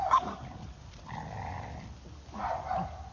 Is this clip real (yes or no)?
yes